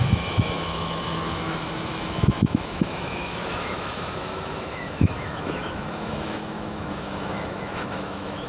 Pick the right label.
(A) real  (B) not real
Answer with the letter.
B